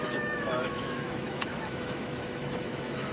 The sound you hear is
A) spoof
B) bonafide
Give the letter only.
A